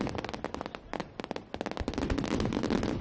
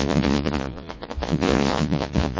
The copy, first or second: second